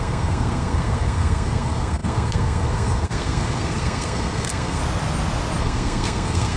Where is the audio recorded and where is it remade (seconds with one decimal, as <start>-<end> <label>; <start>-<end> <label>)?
0.0-4.8 remade; 4.8-5.6 recorded; 5.6-6.6 remade